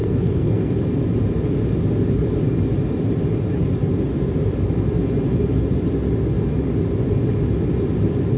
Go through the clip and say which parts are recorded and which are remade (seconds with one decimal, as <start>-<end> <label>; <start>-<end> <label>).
0.0-0.7 remade; 0.7-8.4 recorded